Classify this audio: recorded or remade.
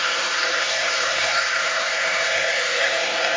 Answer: remade